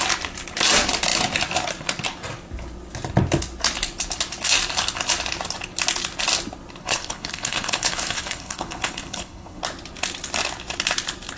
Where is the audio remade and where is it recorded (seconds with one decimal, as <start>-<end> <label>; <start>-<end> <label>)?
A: 0.0-6.8 recorded; 6.8-9.6 remade; 9.6-11.4 recorded